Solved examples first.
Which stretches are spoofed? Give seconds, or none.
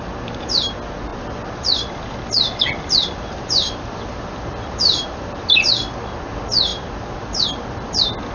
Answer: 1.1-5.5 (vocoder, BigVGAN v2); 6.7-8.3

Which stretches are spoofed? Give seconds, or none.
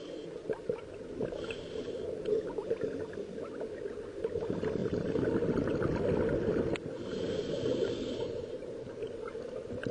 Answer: none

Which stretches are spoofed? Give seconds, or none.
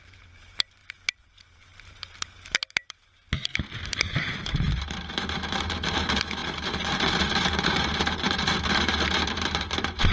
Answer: 0.0-0.8 (vocoder, BigVGAN v2); 1.4-10.1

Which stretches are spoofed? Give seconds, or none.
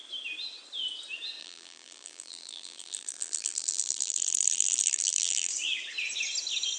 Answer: 1.4-5.5 (vocoder, BigVGAN v2)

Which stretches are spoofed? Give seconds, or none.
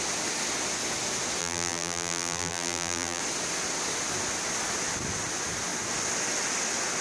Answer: 1.4-3.2 (vocoder, BigVGAN v2)